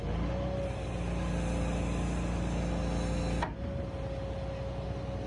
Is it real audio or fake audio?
real